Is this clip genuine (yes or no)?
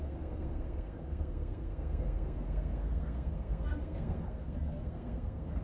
no